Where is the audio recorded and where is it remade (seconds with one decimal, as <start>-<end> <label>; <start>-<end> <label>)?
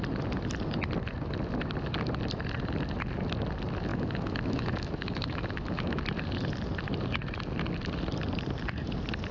0.0-3.9 recorded; 3.9-6.0 remade; 6.0-9.3 recorded